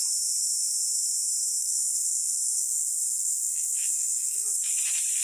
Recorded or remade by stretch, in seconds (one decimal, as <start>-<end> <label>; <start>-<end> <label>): 0.0-1.6 recorded; 1.6-4.7 remade; 4.7-5.2 recorded